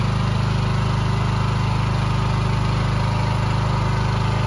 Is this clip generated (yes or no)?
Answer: no